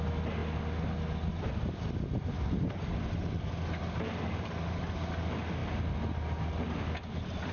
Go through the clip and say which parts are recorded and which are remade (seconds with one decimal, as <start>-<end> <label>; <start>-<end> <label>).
0.0-7.5 recorded